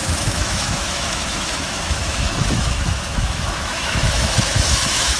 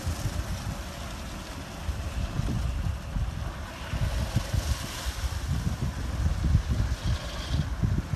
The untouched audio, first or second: second